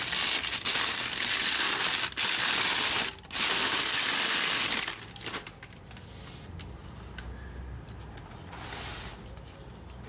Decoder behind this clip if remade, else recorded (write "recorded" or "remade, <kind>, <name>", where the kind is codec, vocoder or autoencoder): recorded